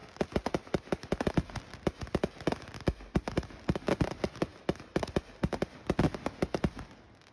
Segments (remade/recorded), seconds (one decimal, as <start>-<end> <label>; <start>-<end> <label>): 0.0-7.3 recorded